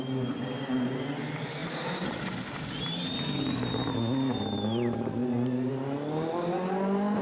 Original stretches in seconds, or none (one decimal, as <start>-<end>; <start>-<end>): 0.0-1.6; 2.3-5.2; 5.7-7.2